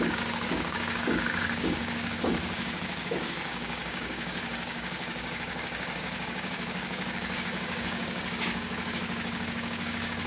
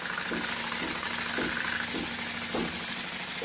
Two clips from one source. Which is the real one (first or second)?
second